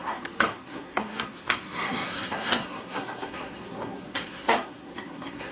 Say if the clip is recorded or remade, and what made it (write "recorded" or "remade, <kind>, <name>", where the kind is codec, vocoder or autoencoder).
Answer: remade, codec, SNAC